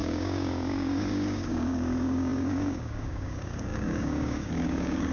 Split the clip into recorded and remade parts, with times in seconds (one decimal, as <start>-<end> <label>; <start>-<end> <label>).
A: 0.0-5.1 remade